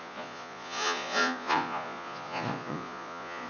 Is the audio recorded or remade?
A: remade